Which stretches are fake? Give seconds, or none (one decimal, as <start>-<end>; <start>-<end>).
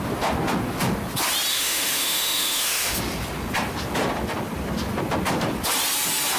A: 1.5-3.0